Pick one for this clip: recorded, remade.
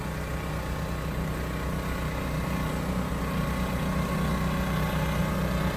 recorded